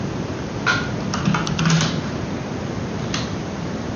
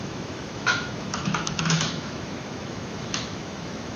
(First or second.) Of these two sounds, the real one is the first